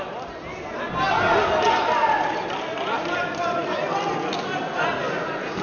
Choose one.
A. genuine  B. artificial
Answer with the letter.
A